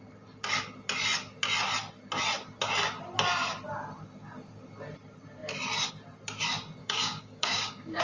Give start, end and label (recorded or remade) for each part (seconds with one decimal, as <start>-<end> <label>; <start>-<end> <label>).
0.0-6.8 recorded; 6.8-8.0 remade